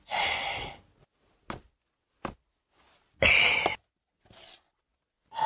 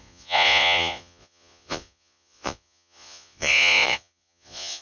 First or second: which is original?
first